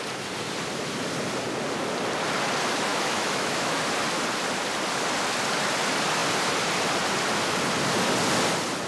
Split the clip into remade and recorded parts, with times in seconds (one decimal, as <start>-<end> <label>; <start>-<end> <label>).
0.0-2.9 recorded; 2.9-3.8 remade; 3.8-8.9 recorded